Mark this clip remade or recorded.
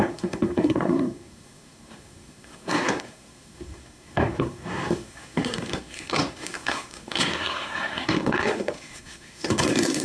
remade